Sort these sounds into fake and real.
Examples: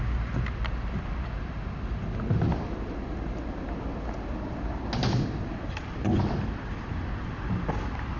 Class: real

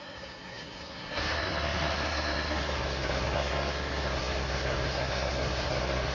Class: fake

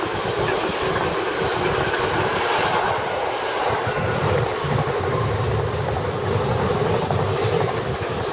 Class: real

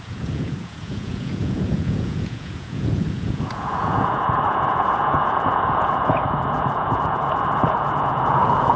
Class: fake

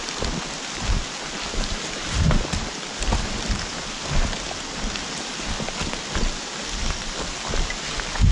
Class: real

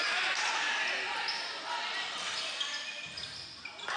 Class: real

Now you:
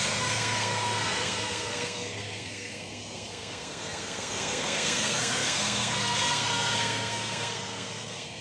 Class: fake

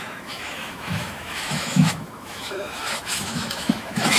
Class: fake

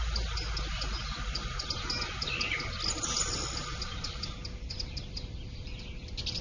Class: real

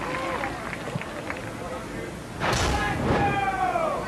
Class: real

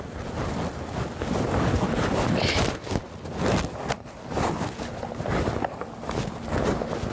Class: real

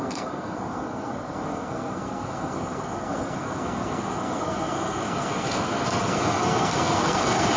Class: fake